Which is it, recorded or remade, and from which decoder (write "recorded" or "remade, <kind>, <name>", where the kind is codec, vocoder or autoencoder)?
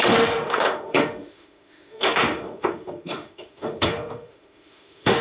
remade, autoencoder, DAC-VAE